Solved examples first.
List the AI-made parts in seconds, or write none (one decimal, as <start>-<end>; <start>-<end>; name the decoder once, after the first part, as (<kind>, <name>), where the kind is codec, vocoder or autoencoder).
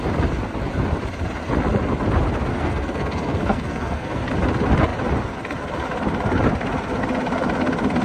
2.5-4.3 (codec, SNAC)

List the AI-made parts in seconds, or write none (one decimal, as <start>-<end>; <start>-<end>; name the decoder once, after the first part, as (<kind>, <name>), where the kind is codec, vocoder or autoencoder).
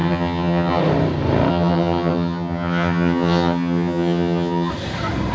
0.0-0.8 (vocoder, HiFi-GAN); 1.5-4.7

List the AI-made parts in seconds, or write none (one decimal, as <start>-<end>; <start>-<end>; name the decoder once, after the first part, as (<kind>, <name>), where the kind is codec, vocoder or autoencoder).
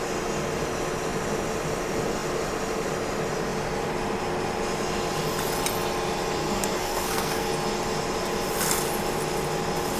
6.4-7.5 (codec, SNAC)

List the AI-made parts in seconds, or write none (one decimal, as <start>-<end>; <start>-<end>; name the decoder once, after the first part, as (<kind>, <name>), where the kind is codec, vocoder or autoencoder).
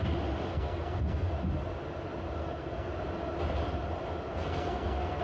0.5-1.3 (codec, SNAC); 2.4-2.9; 4.3-5.2